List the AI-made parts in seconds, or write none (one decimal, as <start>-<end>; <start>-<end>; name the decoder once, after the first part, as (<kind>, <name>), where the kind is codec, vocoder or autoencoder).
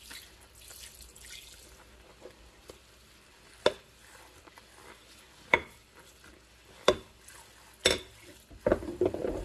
none